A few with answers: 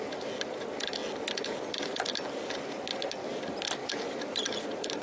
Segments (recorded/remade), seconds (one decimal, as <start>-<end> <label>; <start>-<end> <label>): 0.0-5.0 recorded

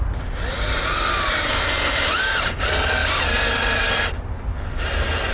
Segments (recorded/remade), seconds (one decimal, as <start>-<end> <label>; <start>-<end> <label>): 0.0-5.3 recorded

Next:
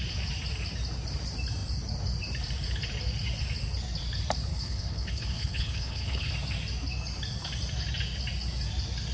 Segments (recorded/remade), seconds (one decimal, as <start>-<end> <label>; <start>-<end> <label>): 0.0-4.5 recorded; 4.5-6.3 remade; 6.3-9.1 recorded

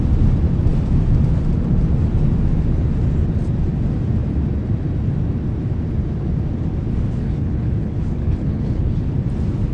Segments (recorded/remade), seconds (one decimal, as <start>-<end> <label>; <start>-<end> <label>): 0.0-7.2 recorded; 7.2-9.0 remade; 9.0-9.7 recorded

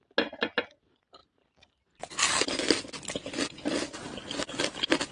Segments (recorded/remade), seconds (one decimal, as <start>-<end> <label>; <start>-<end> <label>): 0.0-5.1 recorded

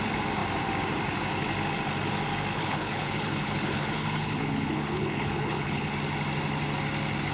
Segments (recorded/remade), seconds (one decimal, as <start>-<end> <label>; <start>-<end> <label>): 0.0-2.5 recorded; 2.5-5.9 remade; 5.9-7.3 recorded